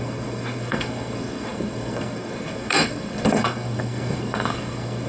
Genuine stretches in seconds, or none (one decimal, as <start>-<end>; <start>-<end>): none